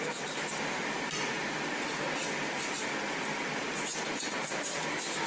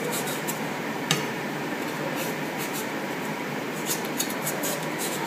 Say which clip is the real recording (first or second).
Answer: first